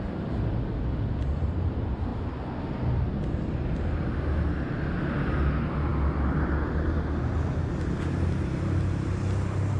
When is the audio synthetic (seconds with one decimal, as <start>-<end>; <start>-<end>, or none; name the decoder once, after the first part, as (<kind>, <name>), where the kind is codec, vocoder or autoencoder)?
none